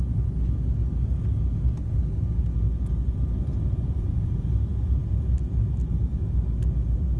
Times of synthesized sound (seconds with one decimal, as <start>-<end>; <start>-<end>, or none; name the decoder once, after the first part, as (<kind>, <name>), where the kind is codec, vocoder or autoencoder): none